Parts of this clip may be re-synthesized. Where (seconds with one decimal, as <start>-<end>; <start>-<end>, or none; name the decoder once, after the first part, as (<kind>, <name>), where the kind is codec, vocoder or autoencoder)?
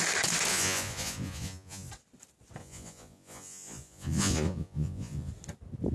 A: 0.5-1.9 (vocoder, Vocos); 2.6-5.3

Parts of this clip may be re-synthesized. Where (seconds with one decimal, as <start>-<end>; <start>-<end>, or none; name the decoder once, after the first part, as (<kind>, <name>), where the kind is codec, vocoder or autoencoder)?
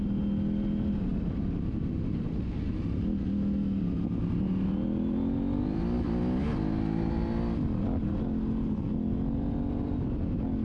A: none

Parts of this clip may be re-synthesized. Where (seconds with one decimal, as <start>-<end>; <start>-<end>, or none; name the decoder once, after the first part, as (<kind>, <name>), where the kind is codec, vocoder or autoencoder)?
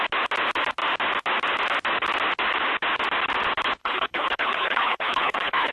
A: 3.8-5.7 (codec, HILCodec)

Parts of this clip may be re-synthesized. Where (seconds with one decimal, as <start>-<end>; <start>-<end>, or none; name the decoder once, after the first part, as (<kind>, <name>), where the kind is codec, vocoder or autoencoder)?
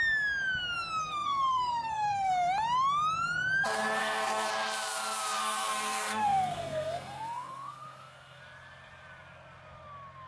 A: 1.0-2.3 (codec, SNAC); 4.0-4.5; 5.4-8.4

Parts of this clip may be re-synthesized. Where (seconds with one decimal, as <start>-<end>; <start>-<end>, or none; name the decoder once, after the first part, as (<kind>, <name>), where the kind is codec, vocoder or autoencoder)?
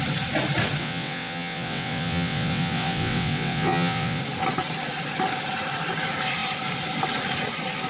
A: 0.8-4.2 (vocoder, WaveNeXt)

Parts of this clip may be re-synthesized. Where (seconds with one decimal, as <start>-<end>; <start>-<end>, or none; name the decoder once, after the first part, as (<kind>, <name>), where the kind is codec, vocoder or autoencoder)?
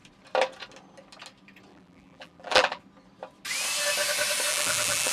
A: 1.7-2.8 (vocoder, BigVGAN v2); 4.5-5.1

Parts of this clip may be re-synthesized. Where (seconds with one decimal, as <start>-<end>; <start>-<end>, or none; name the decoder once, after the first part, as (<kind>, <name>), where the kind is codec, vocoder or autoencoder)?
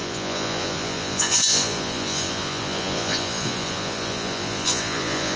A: 0.0-5.4 (vocoder, Vocos)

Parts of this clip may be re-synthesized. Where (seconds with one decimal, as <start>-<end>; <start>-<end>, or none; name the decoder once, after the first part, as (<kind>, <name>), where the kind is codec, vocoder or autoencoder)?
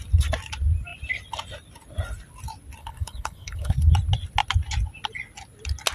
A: 2.8-3.9 (codec, HILCodec)